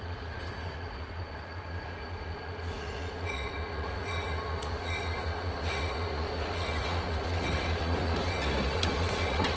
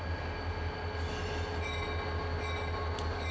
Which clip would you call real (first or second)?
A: second